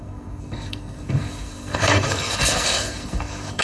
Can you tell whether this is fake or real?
fake